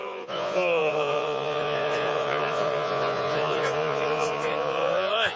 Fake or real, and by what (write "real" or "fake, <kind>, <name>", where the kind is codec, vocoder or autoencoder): fake, vocoder, Vocos